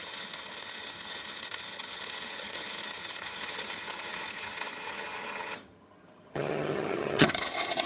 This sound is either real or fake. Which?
fake